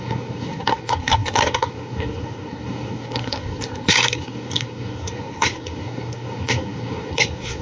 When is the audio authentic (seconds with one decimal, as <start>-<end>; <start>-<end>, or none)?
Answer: none